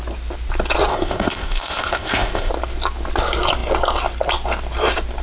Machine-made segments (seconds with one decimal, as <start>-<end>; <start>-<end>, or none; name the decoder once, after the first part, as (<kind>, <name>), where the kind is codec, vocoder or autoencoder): 0.9-2.5 (codec, ZipCodec)